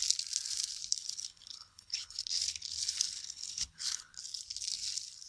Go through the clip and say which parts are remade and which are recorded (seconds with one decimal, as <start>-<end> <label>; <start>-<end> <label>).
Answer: 0.0-1.0 recorded; 1.0-4.2 remade; 4.2-5.3 recorded